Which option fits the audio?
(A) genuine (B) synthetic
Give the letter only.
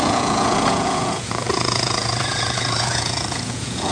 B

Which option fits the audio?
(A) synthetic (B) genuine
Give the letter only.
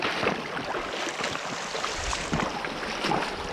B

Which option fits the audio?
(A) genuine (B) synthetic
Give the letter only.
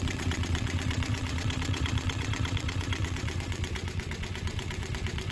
B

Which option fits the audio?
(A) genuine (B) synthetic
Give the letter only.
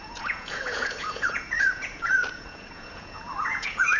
B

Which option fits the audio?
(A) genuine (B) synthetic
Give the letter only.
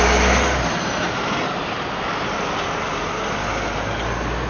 A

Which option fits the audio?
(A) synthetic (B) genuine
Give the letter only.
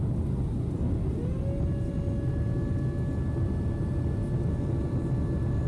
B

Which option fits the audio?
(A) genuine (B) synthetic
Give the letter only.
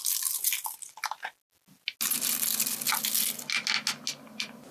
A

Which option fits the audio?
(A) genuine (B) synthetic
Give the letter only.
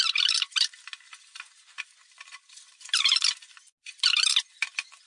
A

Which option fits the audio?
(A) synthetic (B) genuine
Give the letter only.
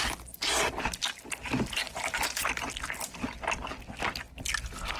B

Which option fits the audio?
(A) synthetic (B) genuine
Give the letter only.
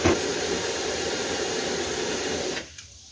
A